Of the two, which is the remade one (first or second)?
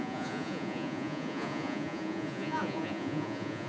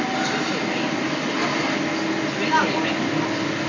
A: first